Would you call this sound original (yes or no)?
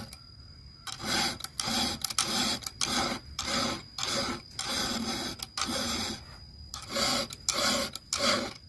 yes